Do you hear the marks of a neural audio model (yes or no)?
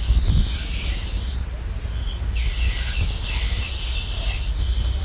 no